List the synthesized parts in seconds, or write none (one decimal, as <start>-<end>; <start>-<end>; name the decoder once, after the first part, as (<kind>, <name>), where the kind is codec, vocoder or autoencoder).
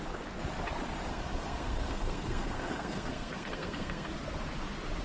1.1-4.1 (codec, SNAC)